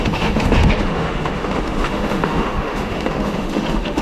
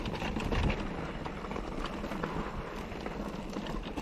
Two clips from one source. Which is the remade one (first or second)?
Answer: first